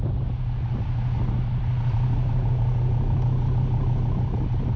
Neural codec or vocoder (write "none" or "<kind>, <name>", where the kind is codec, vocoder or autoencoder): none